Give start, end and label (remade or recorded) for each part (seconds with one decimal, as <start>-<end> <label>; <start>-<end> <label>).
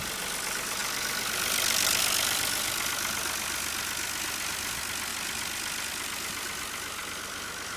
0.0-7.8 recorded